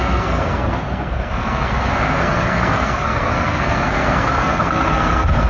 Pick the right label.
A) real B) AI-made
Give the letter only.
B